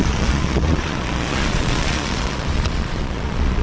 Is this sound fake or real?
fake